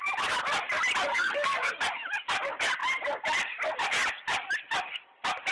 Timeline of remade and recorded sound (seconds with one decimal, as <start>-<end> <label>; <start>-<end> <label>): 0.0-1.1 recorded; 1.1-1.7 remade; 1.7-5.5 recorded